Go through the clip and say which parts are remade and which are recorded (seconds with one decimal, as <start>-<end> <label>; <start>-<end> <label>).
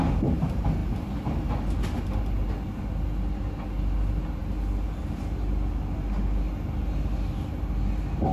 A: 0.0-8.3 recorded